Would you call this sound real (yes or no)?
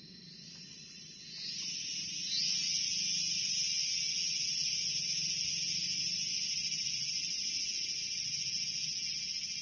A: yes